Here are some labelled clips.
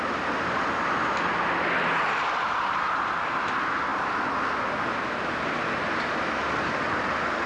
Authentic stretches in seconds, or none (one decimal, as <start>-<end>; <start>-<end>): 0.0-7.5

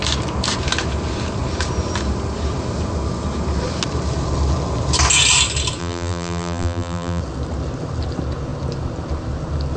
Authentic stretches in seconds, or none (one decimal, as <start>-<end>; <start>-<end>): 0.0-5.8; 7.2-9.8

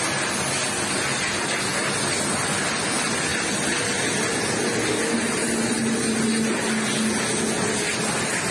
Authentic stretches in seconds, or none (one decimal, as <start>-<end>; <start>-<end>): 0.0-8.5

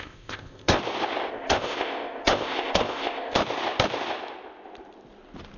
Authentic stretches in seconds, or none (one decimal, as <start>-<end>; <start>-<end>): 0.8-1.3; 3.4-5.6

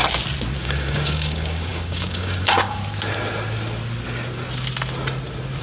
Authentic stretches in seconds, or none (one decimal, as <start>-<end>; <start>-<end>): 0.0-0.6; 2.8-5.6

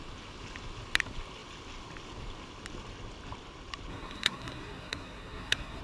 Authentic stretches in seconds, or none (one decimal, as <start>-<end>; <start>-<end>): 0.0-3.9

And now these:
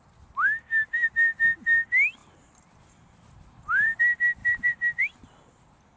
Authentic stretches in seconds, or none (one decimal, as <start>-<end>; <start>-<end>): 0.0-2.2; 4.0-4.4; 5.0-6.0

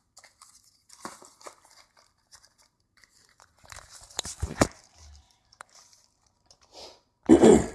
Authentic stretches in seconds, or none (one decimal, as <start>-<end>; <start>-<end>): 0.0-2.3; 5.8-7.7